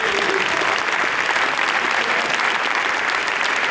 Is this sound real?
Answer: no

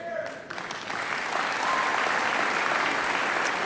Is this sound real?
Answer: yes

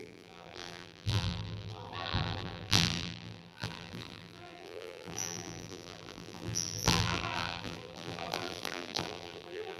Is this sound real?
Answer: no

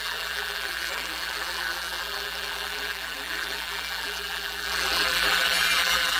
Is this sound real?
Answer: no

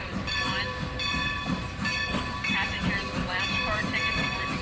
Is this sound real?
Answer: no